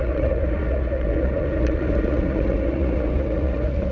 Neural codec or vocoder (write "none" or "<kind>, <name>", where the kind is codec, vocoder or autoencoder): vocoder, Vocos